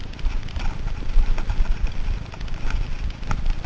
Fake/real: real